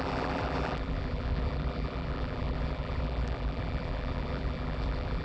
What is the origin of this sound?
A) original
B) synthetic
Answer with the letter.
B